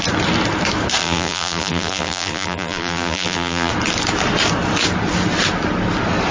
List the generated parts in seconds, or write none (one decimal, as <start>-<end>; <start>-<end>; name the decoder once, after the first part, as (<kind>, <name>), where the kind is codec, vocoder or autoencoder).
1.0-3.7 (vocoder, BigVGAN v2)